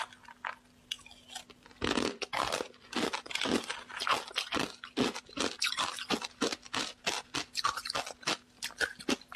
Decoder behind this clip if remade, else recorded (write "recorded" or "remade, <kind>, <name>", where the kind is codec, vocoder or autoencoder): recorded